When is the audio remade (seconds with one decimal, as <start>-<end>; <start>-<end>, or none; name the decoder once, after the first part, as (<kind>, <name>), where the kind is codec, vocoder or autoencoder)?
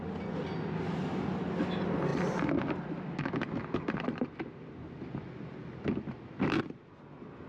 none